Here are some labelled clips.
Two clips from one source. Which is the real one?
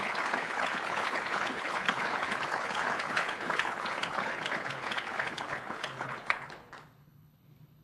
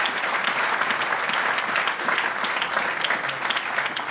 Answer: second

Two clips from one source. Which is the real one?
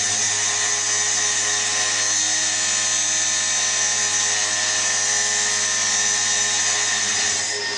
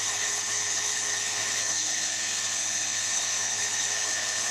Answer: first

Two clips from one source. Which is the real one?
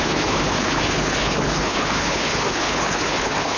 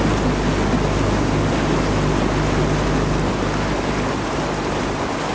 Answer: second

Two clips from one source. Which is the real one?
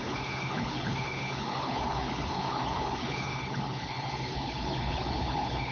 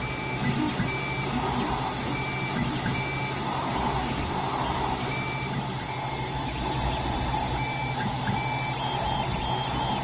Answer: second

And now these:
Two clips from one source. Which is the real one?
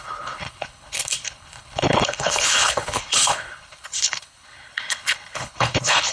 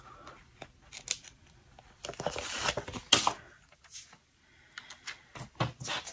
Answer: second